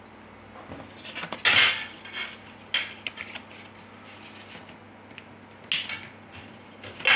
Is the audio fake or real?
real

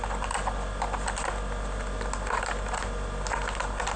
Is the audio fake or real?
real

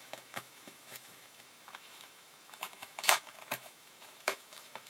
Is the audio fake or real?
fake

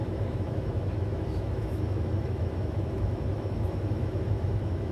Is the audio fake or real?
fake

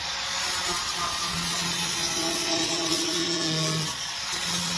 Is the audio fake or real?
fake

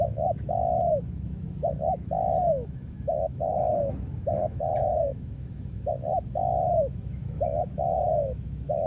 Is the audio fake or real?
fake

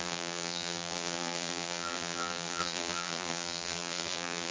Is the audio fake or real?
fake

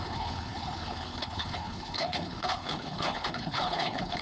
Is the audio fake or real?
fake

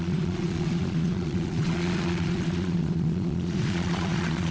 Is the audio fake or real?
fake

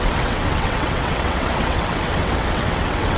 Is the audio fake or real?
fake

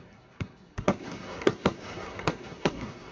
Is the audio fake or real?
fake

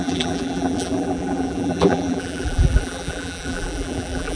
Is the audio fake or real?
fake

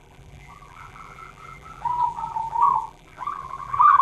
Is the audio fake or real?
fake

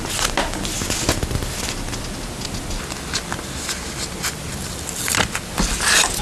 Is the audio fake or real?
real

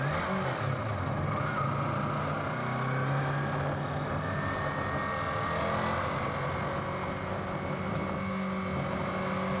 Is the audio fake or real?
real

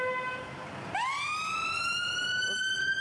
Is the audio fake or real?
real